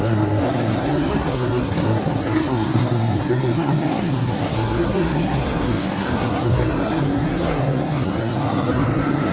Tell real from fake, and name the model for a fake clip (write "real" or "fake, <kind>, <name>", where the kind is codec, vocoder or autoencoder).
fake, codec, SNAC